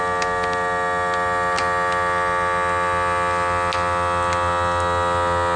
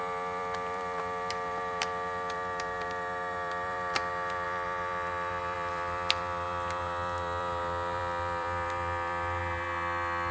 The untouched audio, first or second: first